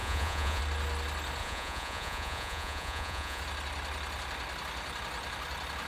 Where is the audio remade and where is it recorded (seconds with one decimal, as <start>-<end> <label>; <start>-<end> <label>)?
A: 0.0-0.6 remade; 0.6-1.4 recorded; 1.4-3.4 remade; 3.4-5.9 recorded